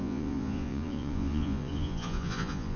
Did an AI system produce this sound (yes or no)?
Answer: yes